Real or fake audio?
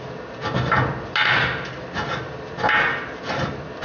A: real